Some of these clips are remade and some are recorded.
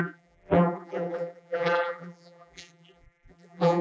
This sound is remade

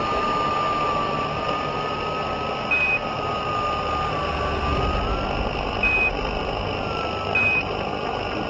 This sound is recorded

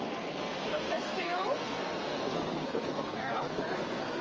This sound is remade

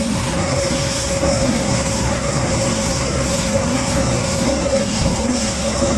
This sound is remade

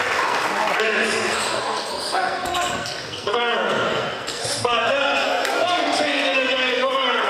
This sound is remade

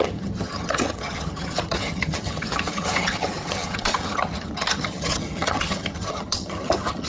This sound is remade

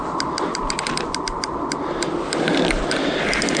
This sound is recorded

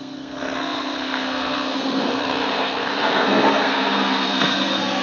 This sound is remade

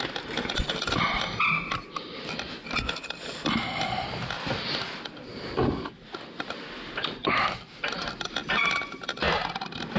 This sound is recorded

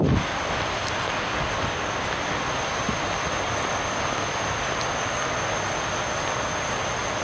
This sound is recorded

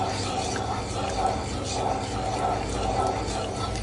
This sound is recorded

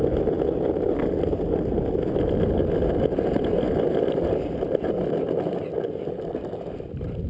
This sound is recorded